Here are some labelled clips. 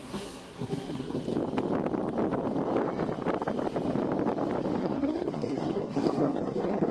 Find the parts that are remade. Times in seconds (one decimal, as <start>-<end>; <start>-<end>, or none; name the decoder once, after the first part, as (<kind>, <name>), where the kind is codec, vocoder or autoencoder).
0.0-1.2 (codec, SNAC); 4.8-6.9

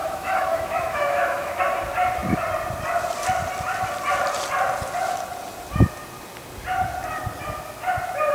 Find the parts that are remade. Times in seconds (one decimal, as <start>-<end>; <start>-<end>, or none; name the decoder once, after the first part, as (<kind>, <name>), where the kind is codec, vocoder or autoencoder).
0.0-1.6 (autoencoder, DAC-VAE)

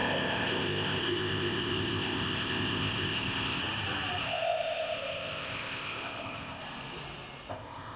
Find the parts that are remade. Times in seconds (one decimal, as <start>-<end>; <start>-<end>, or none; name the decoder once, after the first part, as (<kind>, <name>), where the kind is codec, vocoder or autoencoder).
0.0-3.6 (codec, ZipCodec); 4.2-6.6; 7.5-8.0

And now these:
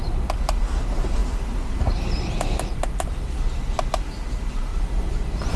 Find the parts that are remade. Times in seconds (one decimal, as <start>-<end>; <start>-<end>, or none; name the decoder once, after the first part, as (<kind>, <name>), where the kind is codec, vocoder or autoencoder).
1.2-1.8 (vocoder, BigVGAN v2); 4.7-5.6

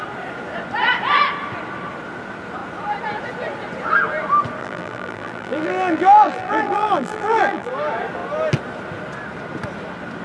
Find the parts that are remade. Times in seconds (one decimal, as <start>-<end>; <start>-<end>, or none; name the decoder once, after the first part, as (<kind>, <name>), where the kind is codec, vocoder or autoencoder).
4.6-7.7 (vocoder, BigVGAN v2)